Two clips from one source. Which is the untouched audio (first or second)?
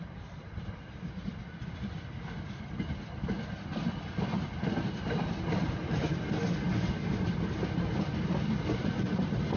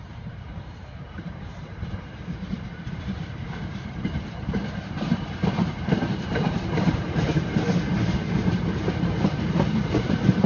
first